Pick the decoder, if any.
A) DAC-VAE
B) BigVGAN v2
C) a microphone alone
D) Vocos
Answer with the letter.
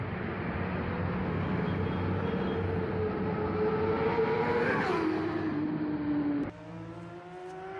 C